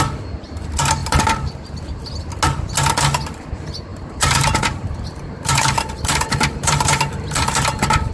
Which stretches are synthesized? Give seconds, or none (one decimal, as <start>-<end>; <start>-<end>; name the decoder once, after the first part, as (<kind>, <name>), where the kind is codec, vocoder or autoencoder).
1.0-2.3 (vocoder, BigVGAN v2); 3.9-8.1

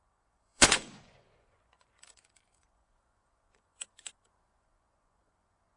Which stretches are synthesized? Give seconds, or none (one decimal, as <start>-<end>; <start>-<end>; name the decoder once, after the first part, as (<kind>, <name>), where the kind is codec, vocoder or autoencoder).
0.0-5.8 (vocoder, Vocos)

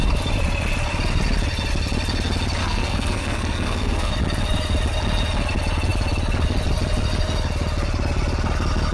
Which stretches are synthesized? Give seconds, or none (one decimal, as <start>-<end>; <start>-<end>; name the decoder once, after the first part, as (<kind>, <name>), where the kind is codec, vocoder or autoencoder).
2.6-4.1 (codec, SNAC)